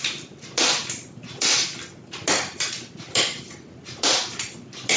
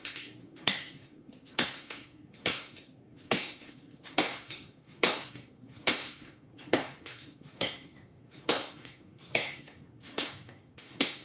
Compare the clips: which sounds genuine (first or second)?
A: first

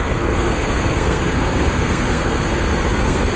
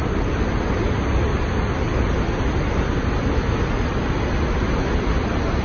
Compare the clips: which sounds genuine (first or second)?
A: second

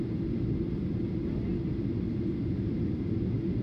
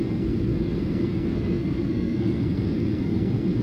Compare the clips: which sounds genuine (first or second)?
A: first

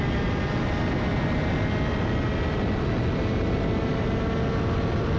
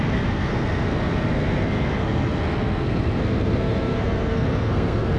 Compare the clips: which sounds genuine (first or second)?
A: first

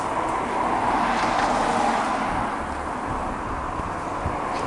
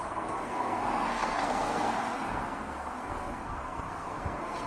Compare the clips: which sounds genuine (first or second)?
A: first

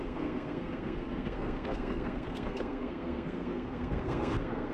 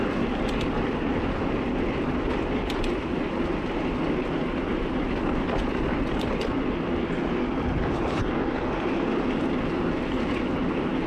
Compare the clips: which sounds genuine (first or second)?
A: second